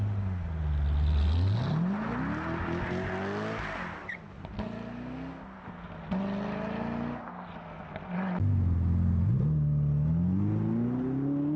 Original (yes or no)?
yes